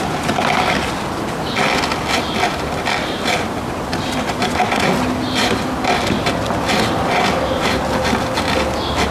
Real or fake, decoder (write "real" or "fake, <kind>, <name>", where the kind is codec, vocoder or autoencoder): real